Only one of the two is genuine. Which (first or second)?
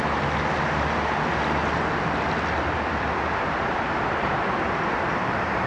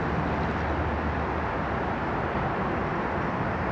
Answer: second